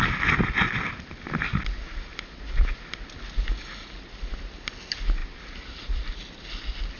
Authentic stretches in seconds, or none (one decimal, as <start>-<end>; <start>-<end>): 0.0-7.0